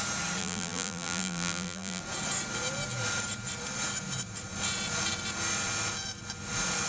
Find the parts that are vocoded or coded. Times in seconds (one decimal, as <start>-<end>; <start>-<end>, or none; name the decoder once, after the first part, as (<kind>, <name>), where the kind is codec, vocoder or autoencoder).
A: 0.4-2.0 (vocoder, BigVGAN v2)